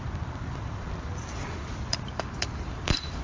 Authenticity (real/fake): fake